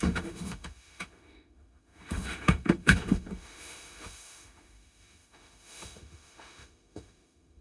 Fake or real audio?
fake